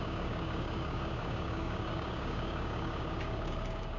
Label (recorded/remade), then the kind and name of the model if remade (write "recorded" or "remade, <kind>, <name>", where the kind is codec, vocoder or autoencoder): remade, codec, DAC